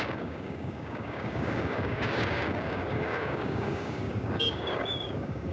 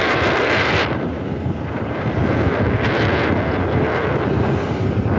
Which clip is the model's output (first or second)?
first